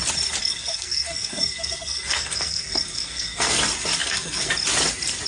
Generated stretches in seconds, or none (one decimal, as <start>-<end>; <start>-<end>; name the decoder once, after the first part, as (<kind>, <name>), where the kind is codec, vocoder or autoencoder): 0.4-3.6 (codec, SNAC); 4.0-4.5